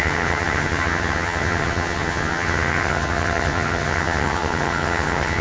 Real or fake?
fake